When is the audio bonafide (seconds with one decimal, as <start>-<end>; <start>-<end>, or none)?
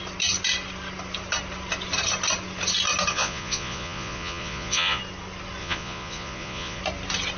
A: 0.0-3.1; 5.0-5.6; 6.8-7.4